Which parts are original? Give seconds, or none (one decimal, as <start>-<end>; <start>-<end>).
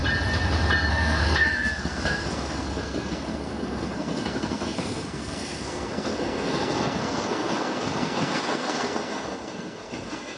0.0-0.9